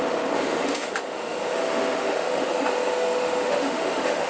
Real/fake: fake